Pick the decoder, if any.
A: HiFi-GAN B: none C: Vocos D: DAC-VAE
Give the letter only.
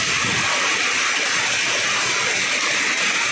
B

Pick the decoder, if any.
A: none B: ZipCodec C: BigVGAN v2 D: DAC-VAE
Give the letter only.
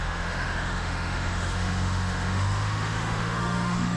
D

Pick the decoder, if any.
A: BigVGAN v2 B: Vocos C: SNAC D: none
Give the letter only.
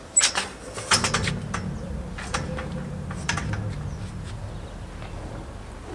D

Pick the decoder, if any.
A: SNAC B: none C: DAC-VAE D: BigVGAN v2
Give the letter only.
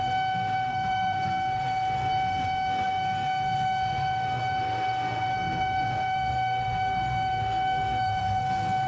A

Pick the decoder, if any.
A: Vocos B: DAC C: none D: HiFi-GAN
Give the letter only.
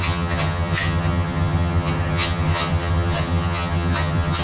D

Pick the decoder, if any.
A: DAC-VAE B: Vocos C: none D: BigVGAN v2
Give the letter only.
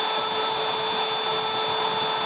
C